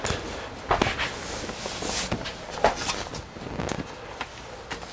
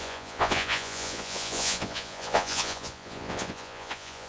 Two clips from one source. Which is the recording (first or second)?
first